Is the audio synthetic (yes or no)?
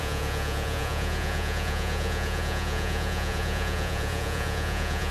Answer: yes